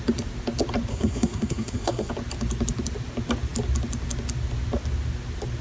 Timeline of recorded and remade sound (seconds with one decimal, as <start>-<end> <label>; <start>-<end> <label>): 0.0-0.9 recorded; 0.9-2.1 remade; 2.1-5.6 recorded